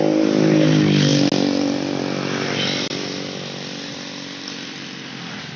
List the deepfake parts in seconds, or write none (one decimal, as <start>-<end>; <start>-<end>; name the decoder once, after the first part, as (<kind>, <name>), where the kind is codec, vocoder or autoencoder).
none